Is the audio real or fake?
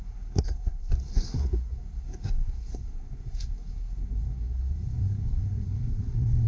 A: fake